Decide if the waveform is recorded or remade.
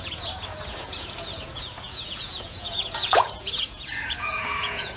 remade